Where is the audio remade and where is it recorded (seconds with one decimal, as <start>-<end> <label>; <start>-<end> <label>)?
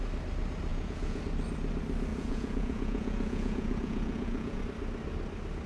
0.0-0.7 recorded; 0.7-1.2 remade; 1.2-2.1 recorded; 2.1-4.6 remade; 4.6-5.7 recorded